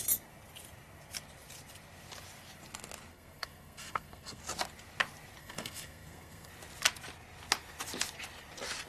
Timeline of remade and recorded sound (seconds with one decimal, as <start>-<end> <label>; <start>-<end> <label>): 0.0-3.1 recorded; 3.1-4.4 remade; 4.4-5.4 recorded; 5.4-6.5 remade; 6.5-8.9 recorded